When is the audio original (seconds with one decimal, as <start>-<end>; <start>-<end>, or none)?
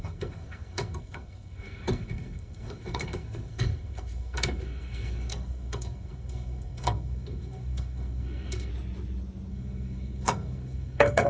8.7-9.5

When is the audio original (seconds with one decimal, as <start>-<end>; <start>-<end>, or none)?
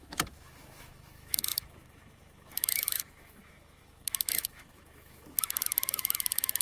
none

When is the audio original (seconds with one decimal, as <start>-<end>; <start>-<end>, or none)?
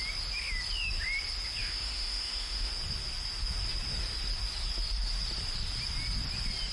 0.0-1.6; 2.7-6.7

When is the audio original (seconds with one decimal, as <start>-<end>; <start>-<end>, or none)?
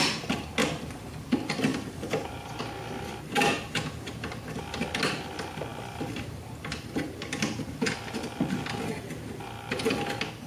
0.0-1.7; 2.6-10.5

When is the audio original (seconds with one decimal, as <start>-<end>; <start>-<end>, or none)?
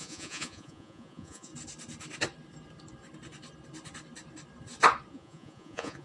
1.5-5.1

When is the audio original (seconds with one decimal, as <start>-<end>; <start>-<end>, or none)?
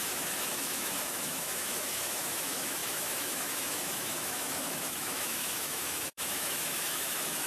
none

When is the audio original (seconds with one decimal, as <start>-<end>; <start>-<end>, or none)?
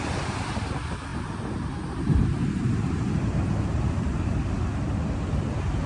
0.0-1.1; 4.3-5.9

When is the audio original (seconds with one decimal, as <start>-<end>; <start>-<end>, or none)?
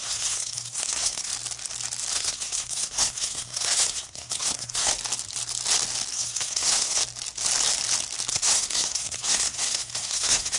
1.3-2.1; 4.9-6.1; 7.0-8.3